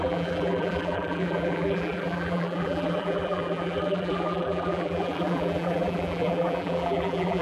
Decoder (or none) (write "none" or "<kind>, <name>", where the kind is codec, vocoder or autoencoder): vocoder, BigVGAN v2